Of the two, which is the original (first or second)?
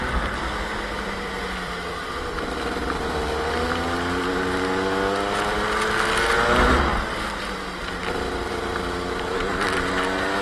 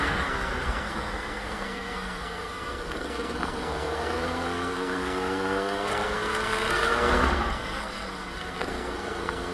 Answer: first